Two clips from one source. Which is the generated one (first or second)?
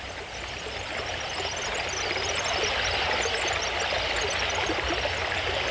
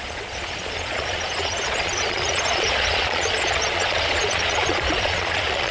second